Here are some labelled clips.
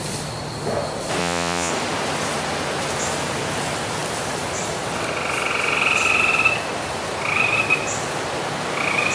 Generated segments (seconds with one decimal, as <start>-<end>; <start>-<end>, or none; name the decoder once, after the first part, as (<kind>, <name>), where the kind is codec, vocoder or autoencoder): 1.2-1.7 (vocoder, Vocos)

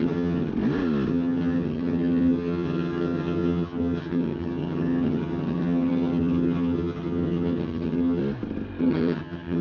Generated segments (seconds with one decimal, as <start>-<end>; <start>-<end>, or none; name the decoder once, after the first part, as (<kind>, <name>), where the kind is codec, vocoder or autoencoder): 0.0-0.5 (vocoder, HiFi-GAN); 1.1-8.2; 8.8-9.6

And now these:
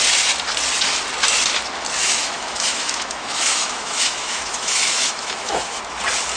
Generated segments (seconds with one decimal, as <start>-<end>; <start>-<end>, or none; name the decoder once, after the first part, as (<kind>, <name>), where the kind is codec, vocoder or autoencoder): 2.0-5.8 (autoencoder, DAC-VAE)

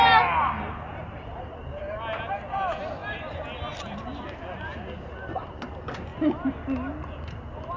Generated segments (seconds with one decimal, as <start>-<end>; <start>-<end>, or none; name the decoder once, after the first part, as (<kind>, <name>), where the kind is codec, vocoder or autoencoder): none